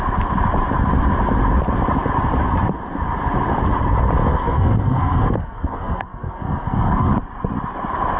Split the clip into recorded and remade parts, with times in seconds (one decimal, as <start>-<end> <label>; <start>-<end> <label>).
0.0-4.3 recorded; 4.3-7.1 remade; 7.1-8.2 recorded